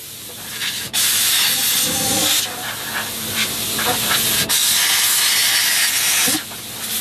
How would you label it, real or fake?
real